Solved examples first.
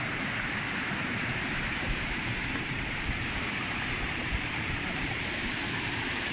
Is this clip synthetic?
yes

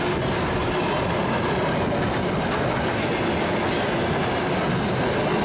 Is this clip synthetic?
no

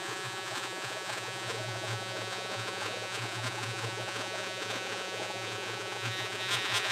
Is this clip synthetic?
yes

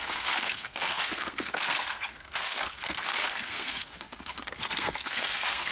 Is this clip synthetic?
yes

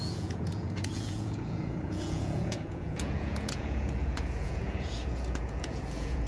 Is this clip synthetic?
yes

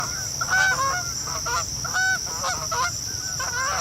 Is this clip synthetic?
no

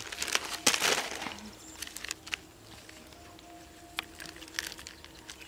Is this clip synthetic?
no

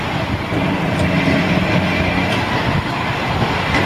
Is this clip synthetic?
no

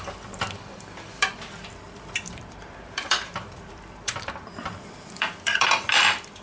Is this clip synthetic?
yes